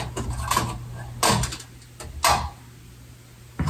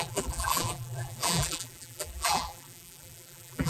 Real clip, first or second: first